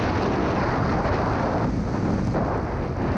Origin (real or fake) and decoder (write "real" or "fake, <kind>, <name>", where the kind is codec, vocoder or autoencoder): real